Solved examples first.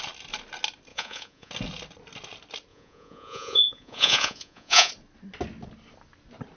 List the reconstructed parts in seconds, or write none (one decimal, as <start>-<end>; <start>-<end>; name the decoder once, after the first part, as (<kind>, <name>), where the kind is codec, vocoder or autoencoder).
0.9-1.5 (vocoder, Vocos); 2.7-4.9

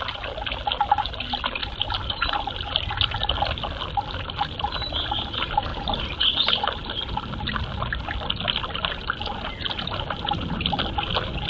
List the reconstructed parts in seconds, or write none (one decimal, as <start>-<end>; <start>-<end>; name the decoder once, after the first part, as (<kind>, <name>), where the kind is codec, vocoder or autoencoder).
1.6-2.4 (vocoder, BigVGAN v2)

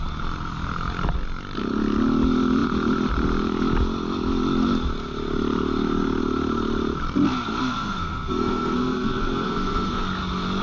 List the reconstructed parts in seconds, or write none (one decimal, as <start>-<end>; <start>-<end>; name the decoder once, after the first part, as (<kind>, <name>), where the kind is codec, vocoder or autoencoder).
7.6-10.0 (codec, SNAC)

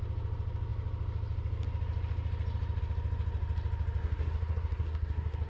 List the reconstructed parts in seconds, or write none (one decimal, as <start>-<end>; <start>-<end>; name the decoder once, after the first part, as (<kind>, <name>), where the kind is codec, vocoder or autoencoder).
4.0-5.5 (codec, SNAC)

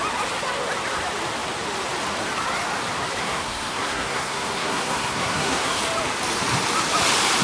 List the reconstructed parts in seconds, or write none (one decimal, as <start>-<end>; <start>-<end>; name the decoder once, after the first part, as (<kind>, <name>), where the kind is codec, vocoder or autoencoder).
3.2-5.8 (codec, SNAC)

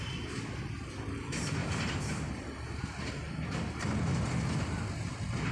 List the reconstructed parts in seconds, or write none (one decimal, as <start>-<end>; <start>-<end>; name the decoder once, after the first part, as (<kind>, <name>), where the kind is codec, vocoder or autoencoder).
1.6-2.8 (vocoder, BigVGAN v2)

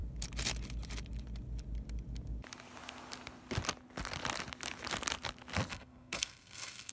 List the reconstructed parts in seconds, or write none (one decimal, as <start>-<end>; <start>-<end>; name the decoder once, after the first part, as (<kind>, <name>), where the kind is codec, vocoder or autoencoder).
5.7-6.9 (codec, SNAC)

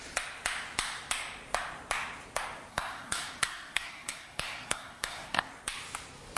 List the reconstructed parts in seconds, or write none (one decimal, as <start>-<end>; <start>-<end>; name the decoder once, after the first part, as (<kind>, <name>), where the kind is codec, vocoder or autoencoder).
2.7-5.5 (codec, SNAC)